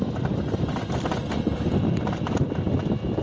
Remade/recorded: recorded